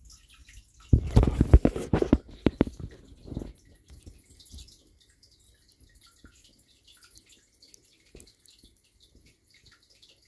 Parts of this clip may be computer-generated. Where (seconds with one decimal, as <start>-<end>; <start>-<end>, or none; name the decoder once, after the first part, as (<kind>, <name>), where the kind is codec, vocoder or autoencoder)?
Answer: none

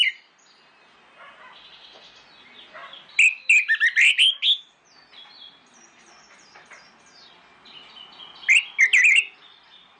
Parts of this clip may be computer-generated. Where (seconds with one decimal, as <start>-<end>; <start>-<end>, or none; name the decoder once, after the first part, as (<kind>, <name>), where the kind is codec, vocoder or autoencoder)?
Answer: none

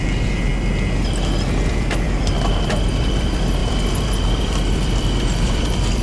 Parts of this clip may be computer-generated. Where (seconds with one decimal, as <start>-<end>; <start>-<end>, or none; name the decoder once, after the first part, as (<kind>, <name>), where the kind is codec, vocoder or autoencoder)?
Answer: 0.0-0.5 (vocoder, BigVGAN v2); 1.7-6.0

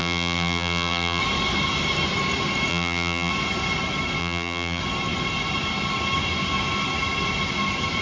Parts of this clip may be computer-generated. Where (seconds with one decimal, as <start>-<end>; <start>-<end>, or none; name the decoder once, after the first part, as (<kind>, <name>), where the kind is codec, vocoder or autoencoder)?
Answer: 0.0-1.2 (vocoder, BigVGAN v2); 2.7-3.3; 4.2-4.8